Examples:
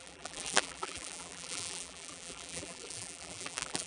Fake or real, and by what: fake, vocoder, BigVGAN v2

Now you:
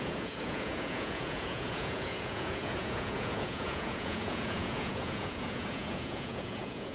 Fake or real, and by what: fake, vocoder, Vocos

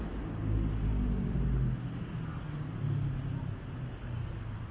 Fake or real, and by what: real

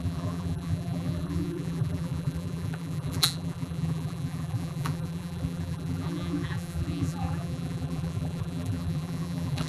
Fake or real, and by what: fake, vocoder, BigVGAN v2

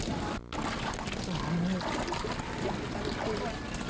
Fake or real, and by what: real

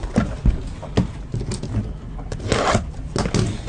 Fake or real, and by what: real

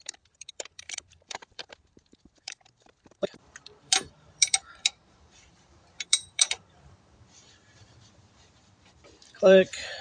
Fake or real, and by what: fake, vocoder, BigVGAN v2